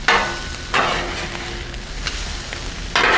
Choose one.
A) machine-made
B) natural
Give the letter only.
B